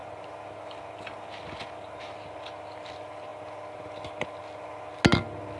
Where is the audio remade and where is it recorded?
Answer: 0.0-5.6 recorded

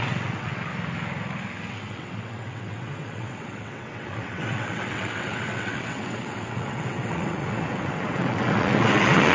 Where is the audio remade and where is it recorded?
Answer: 0.0-0.7 remade; 0.7-1.7 recorded; 1.7-9.3 remade

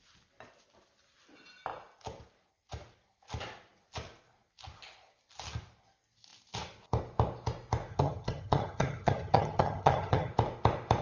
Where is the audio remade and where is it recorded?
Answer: 0.0-7.9 recorded; 7.9-10.3 remade; 10.3-11.0 recorded

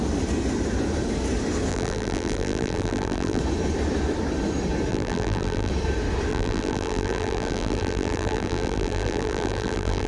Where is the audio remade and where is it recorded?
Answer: 0.0-1.7 recorded; 1.7-3.4 remade; 3.4-4.9 recorded; 4.9-5.7 remade; 5.7-6.3 recorded; 6.3-10.1 remade